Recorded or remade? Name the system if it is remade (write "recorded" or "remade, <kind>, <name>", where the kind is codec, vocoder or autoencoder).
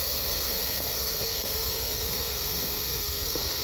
remade, codec, SNAC